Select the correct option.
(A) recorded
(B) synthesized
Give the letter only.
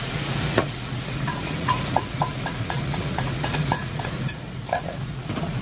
B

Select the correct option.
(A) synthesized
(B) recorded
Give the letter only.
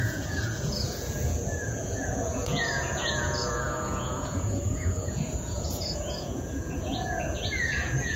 A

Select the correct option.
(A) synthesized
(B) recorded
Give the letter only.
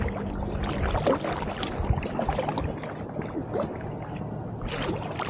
B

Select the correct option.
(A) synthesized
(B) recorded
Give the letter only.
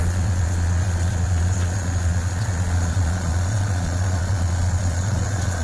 A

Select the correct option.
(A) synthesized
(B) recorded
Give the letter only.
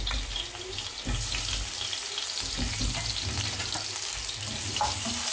B